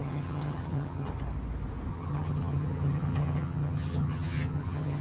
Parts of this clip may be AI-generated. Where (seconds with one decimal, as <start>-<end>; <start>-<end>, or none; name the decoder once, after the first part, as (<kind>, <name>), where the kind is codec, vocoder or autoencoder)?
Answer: 0.0-1.1 (vocoder, HiFi-GAN); 1.9-5.0

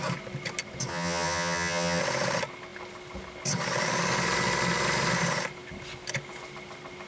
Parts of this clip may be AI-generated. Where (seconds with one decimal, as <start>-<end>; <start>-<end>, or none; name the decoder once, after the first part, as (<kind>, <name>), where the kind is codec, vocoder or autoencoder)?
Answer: 0.9-2.0 (vocoder, HiFi-GAN)

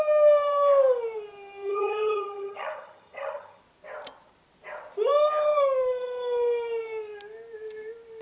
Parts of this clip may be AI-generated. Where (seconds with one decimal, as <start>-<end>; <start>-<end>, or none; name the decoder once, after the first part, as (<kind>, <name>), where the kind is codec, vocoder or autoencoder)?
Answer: 1.7-3.6 (vocoder, HiFi-GAN)